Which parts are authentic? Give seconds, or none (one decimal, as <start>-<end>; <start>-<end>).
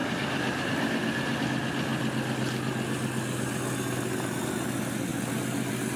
1.4-6.0